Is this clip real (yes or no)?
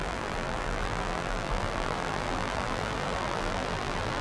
no